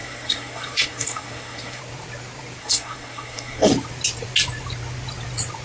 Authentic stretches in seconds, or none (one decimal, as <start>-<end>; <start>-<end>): 1.8-2.6; 3.7-5.6